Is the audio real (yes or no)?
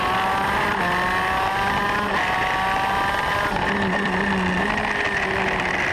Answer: yes